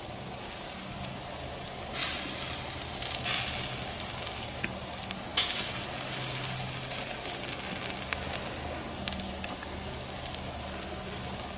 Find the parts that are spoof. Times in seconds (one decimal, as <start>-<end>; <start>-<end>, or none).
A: none